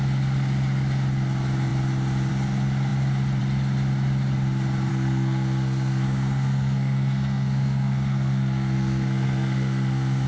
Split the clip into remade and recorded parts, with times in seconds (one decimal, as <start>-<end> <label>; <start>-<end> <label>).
0.0-4.9 recorded; 4.9-10.3 remade

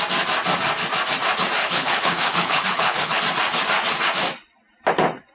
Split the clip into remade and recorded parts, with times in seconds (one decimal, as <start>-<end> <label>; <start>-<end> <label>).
0.0-1.6 recorded; 1.6-3.2 remade; 3.2-5.3 recorded

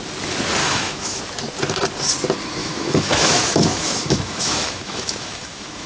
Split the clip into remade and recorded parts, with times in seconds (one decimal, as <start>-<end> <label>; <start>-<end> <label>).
0.0-0.6 recorded; 0.6-1.2 remade; 1.2-2.6 recorded; 2.6-5.9 remade